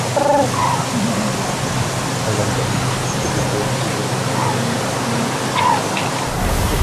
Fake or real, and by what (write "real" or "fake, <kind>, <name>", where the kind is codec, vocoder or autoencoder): real